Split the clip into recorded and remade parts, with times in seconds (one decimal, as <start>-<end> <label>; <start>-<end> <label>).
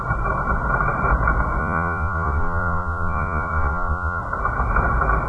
0.0-1.6 recorded; 1.6-4.2 remade; 4.2-5.3 recorded